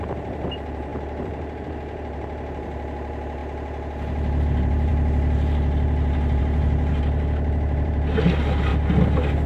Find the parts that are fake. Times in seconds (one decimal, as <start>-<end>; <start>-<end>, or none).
0.0-8.7